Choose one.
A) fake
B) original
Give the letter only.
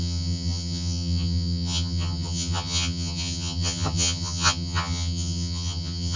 A